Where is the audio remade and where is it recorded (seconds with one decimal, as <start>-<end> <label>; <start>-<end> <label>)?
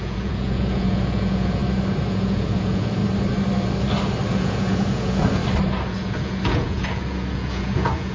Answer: 0.0-1.6 remade; 1.6-2.1 recorded; 2.1-3.0 remade; 3.0-4.3 recorded; 4.3-5.4 remade; 5.4-5.9 recorded; 5.9-8.1 remade